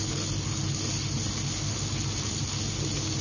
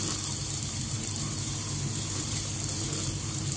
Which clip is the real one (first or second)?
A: first